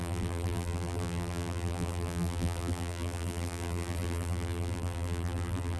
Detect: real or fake fake